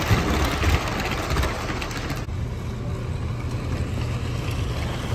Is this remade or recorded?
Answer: recorded